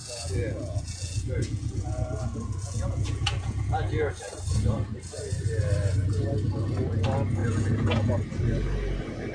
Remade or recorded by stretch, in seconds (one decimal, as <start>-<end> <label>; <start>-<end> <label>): 0.0-4.2 remade; 4.2-7.4 recorded; 7.4-8.2 remade; 8.2-9.3 recorded